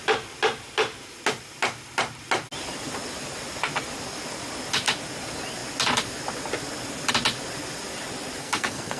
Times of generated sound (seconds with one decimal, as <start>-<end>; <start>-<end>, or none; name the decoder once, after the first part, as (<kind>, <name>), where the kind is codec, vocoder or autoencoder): 8.4-9.0 (codec, SNAC)